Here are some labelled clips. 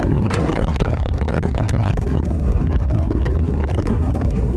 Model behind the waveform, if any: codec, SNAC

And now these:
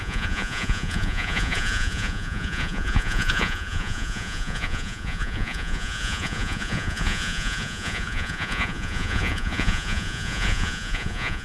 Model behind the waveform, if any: vocoder, Vocos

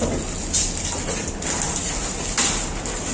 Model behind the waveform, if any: none